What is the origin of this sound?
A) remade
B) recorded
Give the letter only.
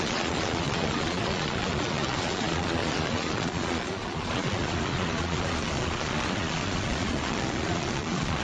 A